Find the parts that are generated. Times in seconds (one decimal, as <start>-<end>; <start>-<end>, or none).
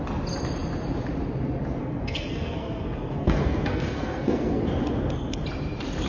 1.8-4.6